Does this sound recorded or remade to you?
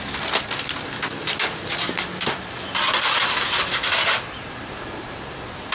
recorded